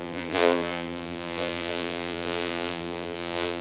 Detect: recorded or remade remade